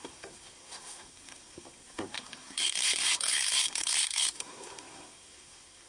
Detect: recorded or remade remade